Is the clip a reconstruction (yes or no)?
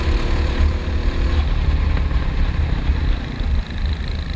no